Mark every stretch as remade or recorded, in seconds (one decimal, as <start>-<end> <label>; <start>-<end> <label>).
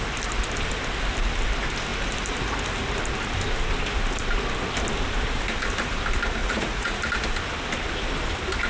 0.0-6.4 recorded; 6.4-7.0 remade; 7.0-8.7 recorded